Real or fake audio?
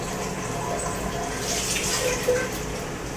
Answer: real